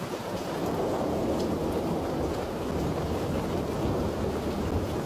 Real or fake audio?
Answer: real